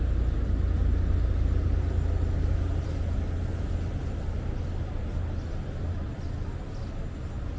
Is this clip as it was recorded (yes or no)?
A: yes